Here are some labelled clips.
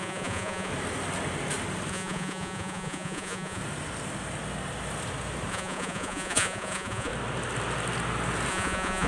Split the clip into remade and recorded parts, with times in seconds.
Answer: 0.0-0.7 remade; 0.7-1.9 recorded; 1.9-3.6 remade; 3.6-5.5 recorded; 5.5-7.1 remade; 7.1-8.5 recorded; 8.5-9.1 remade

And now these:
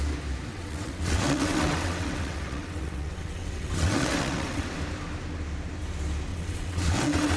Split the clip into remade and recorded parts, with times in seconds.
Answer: 0.0-0.5 recorded; 0.5-4.7 remade; 4.7-6.3 recorded; 6.3-7.4 remade